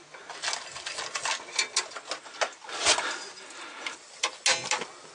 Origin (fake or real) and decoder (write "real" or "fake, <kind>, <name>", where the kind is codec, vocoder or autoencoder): real